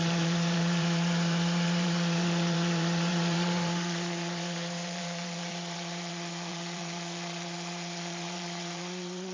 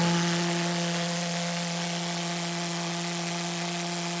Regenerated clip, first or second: first